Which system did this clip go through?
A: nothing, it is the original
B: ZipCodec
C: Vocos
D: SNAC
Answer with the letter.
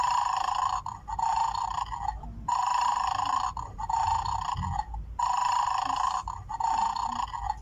A